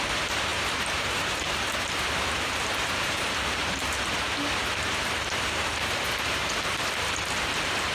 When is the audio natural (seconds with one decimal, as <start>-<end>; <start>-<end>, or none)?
3.6-4.6